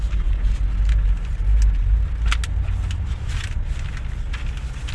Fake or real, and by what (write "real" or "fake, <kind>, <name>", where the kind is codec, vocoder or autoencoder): real